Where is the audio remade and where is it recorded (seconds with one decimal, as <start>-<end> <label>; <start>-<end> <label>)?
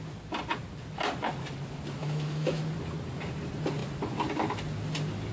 0.0-2.0 recorded; 2.0-2.6 remade; 2.6-5.3 recorded